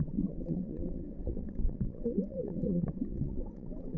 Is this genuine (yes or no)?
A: no